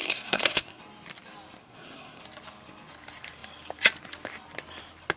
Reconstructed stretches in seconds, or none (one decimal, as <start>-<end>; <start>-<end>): 0.0-0.8; 1.6-2.2